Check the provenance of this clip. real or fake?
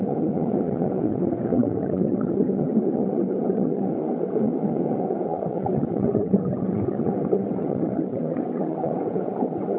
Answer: fake